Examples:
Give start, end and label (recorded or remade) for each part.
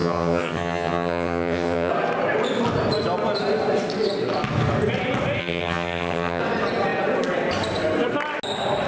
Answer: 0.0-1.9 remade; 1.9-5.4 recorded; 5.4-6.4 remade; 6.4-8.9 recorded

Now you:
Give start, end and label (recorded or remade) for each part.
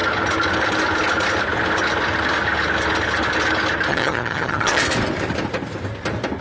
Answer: 0.0-3.9 recorded; 3.9-4.8 remade; 4.8-6.4 recorded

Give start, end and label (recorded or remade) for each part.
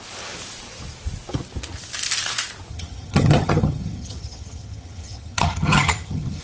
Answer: 0.0-2.7 recorded; 2.7-6.4 remade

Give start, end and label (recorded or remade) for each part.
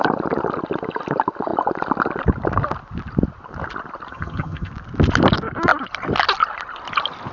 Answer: 0.0-4.1 recorded; 4.1-4.7 remade; 4.7-7.3 recorded